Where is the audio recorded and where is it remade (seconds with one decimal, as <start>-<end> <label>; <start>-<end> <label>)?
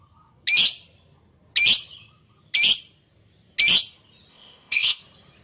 0.0-4.3 recorded; 4.3-5.0 remade; 5.0-5.4 recorded